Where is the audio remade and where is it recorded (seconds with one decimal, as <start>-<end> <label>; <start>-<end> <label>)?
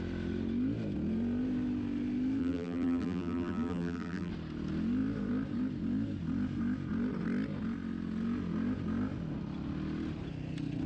0.0-2.4 recorded; 2.4-4.3 remade; 4.3-10.9 recorded